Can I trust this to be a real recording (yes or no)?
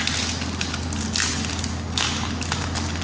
yes